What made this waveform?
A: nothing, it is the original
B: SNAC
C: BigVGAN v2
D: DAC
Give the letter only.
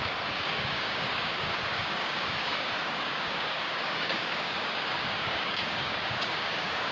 D